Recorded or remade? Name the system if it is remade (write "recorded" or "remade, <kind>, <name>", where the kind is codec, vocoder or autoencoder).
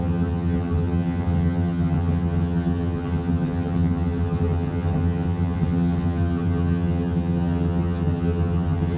remade, vocoder, HiFi-GAN